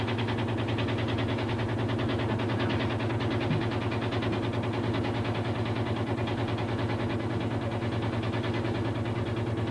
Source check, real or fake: real